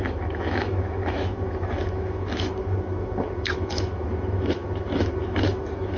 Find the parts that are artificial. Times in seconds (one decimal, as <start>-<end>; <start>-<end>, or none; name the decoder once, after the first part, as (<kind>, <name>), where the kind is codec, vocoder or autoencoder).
0.0-6.0 (autoencoder, DAC-VAE)